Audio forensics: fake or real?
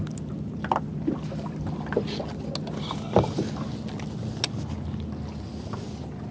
real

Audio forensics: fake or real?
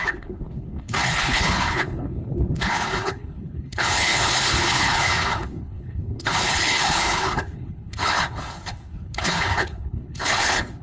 fake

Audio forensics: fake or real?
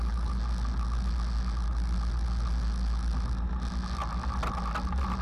real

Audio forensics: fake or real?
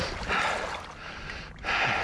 real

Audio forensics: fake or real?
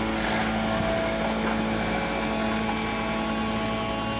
real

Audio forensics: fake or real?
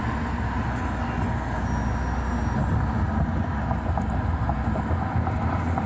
real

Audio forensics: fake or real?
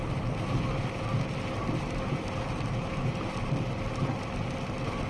real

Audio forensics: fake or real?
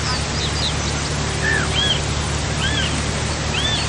real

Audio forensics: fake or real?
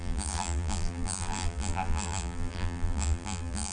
fake